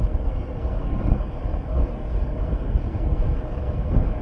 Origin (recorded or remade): remade